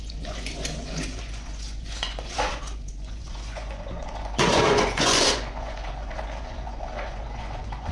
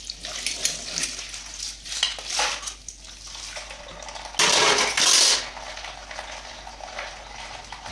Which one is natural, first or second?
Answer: second